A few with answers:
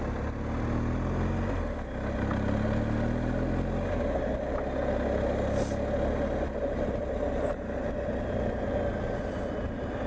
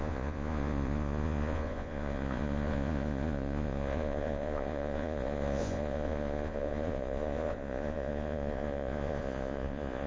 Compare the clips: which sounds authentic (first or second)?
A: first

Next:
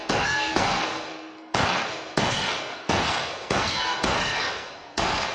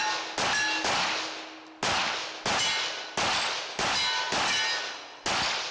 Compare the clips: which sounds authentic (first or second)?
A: second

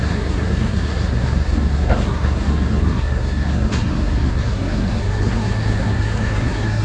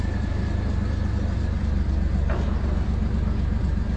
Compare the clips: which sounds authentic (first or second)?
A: second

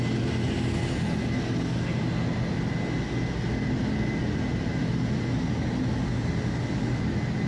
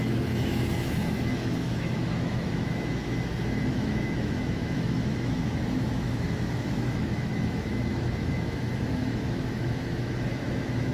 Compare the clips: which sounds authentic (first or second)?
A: first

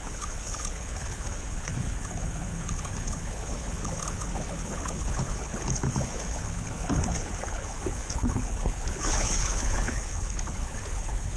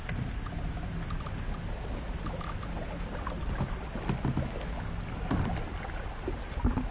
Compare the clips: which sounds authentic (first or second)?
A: second